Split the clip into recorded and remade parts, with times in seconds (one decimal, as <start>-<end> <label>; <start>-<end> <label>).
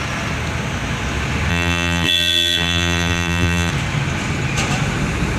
0.0-1.5 recorded; 1.5-3.7 remade; 3.7-5.4 recorded